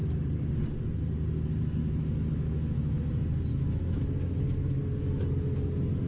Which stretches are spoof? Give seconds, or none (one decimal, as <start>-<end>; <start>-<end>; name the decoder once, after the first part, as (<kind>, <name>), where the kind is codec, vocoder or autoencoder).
1.8-3.0 (autoencoder, DAC-VAE); 3.5-4.8